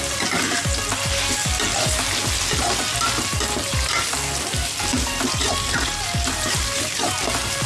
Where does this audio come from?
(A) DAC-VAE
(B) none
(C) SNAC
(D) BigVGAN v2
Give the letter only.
B